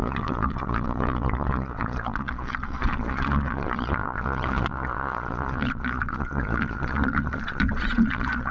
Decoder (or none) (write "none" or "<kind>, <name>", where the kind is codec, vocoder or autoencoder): vocoder, Vocos